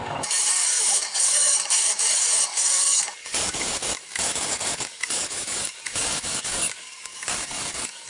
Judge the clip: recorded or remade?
remade